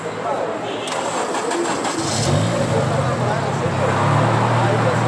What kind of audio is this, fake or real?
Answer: real